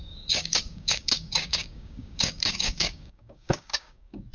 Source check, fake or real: fake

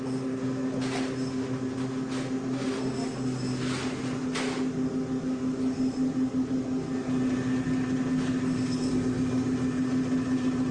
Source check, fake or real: real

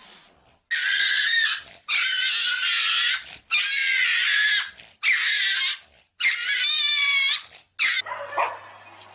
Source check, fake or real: real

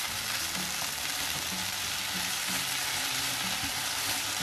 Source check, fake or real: fake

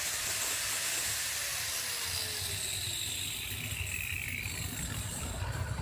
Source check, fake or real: real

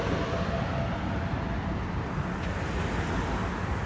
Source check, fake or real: real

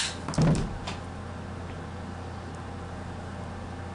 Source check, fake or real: real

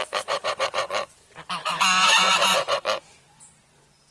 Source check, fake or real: fake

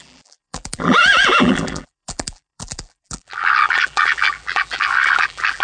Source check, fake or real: fake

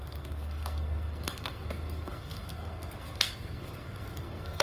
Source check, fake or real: fake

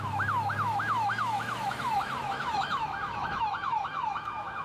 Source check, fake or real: fake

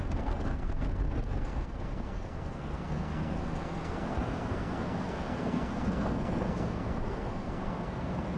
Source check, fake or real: fake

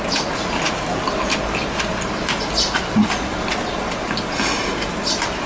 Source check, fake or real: real